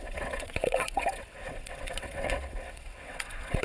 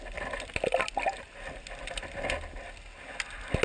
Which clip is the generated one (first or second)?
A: first